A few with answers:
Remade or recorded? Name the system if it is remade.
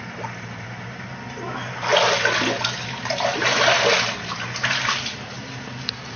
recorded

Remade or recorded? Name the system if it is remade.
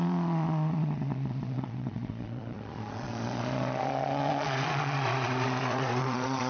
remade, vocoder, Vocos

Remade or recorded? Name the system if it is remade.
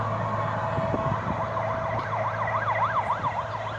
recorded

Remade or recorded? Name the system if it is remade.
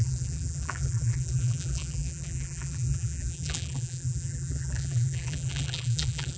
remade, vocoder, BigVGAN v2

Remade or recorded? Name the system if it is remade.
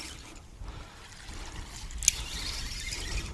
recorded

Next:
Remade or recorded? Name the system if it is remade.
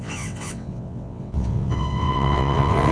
remade, vocoder, WaveNeXt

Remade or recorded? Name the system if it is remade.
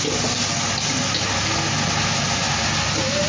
recorded